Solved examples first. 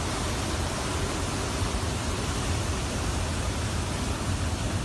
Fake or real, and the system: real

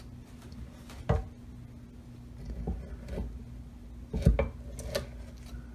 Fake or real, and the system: real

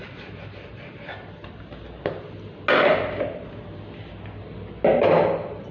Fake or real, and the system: real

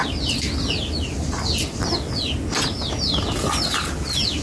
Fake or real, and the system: real